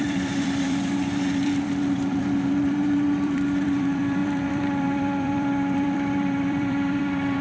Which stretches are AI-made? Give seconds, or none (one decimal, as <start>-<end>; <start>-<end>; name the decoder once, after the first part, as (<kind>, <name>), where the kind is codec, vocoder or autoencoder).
0.0-7.4 (vocoder, BigVGAN v2)